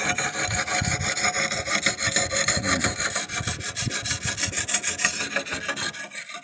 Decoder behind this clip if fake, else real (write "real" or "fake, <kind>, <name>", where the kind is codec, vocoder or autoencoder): real